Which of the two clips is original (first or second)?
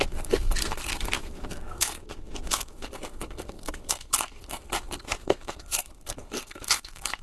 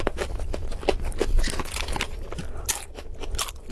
second